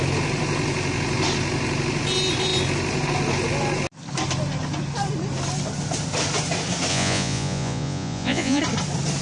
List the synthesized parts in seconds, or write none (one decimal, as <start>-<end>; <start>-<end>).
6.9-8.6